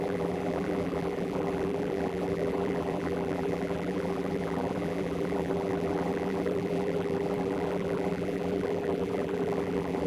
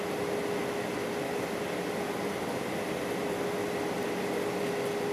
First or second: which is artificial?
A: first